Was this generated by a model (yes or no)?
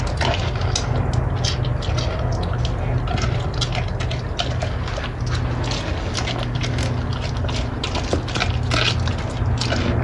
no